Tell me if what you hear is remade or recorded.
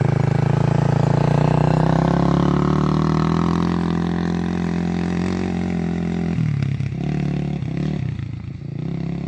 recorded